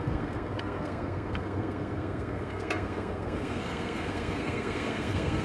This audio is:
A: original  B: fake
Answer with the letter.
B